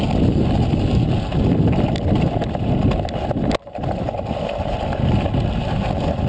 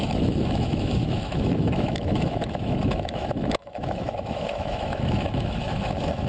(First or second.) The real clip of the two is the first